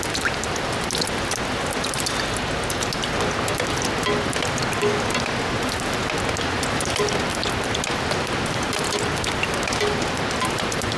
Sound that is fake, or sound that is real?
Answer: real